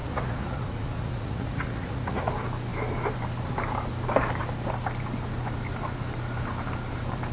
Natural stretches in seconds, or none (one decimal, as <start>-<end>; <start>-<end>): 2.3-7.3

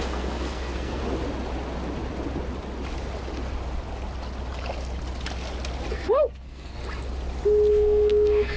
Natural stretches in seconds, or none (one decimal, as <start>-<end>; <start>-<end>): 1.0-5.9; 6.8-7.7